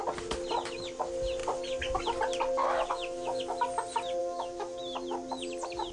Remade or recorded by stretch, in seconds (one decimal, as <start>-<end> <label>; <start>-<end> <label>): 0.0-2.6 recorded; 2.6-3.4 remade; 3.4-4.2 recorded; 4.2-4.8 remade; 4.8-5.9 recorded